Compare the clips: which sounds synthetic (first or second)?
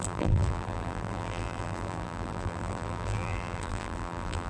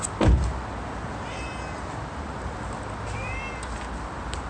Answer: first